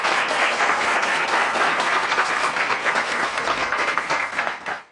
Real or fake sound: fake